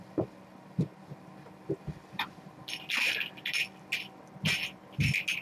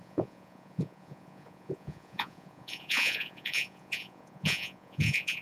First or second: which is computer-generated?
second